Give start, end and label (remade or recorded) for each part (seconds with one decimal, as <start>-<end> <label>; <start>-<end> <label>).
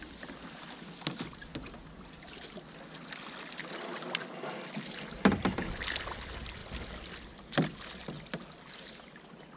0.0-9.6 recorded